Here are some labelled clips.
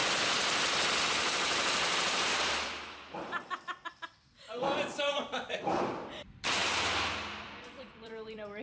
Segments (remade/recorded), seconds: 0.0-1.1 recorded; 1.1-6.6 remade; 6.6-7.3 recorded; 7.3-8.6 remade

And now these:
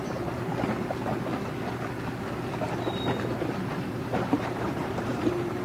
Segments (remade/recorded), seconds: 0.0-0.5 remade; 0.5-3.8 recorded; 3.8-5.6 remade